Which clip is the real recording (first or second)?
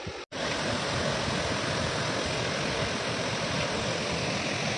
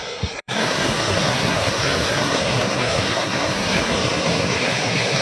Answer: first